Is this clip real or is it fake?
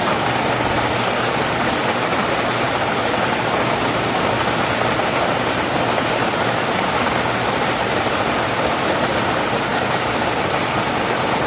real